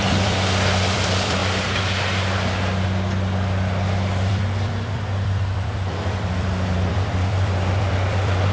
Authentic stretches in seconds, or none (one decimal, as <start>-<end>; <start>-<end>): 1.4-4.3